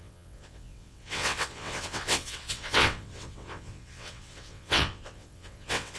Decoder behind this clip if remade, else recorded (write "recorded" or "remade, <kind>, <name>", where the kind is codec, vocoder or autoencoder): remade, vocoder, WaveNeXt